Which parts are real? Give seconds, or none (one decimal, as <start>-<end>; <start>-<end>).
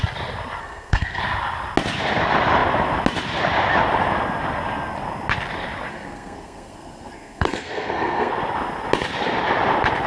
0.0-0.6; 1.2-5.9; 8.3-10.1